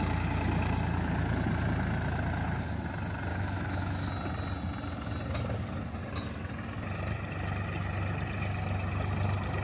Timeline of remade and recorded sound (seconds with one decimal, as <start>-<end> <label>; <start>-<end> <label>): 0.0-3.3 recorded; 3.3-4.1 remade; 4.1-9.6 recorded